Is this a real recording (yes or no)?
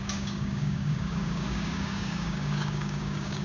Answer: no